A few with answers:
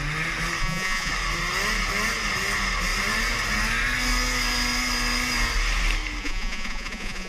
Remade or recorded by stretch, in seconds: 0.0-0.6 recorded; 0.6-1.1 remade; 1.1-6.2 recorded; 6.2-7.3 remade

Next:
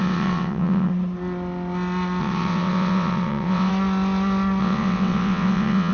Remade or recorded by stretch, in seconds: 0.0-0.9 remade; 0.9-2.2 recorded; 2.2-3.7 remade; 3.7-4.6 recorded; 4.6-5.9 remade

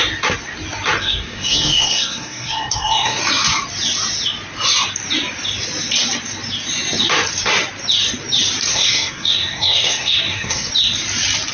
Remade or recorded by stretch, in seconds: 0.0-1.0 recorded; 1.0-3.2 remade; 3.2-8.7 recorded; 8.7-10.7 remade; 10.7-11.5 recorded

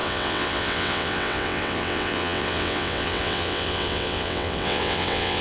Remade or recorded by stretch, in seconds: 0.0-5.4 remade

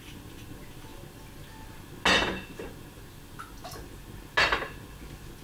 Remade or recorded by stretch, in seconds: 0.0-5.4 recorded

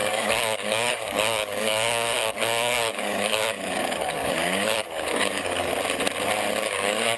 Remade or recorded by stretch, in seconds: 0.0-5.7 remade; 5.7-6.6 recorded; 6.6-7.2 remade